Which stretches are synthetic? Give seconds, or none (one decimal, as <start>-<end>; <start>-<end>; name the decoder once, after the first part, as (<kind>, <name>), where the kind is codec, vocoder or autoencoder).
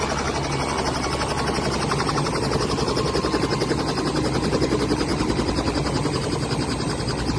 none